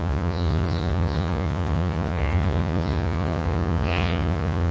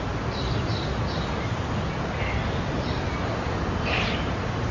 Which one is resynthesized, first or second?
first